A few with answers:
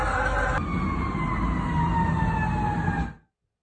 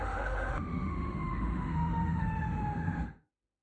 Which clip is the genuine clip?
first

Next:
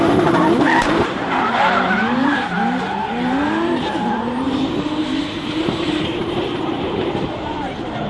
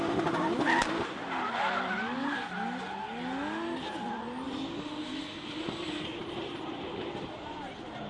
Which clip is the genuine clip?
second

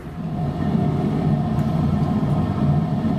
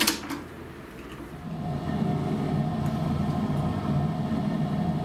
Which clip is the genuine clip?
second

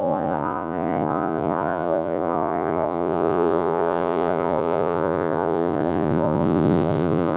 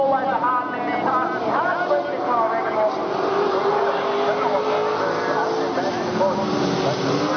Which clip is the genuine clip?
second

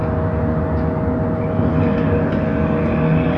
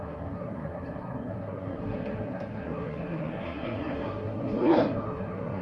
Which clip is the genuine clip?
first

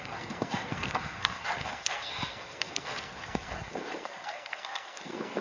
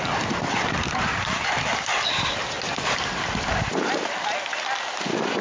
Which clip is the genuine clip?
second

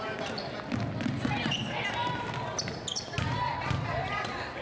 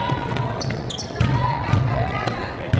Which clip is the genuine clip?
first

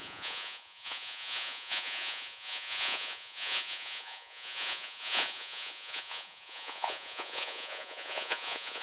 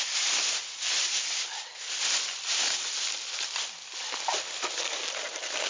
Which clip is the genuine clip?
second